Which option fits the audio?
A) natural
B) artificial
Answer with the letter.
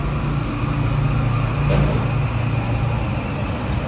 A